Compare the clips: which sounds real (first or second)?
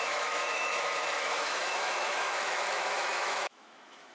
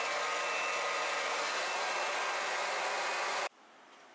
second